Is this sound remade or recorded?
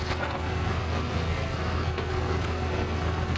remade